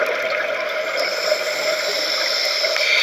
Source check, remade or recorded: recorded